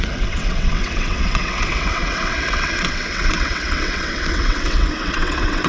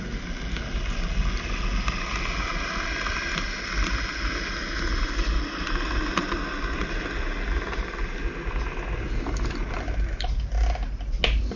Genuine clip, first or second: second